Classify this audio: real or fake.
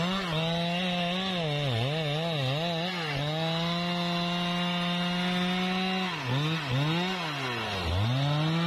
real